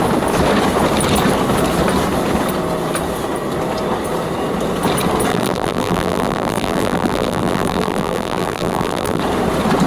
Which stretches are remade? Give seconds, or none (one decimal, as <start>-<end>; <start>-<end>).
5.3-9.2